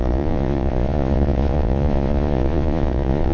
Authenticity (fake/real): fake